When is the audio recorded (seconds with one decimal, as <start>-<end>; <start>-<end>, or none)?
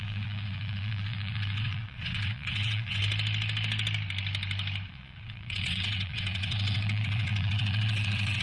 3.0-4.9